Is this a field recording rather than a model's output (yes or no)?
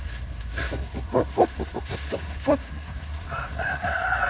no